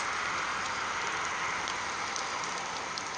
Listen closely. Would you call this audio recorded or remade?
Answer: recorded